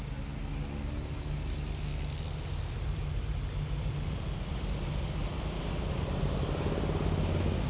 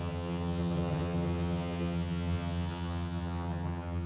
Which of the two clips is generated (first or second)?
second